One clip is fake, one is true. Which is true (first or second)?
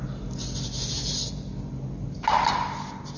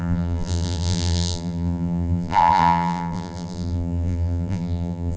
first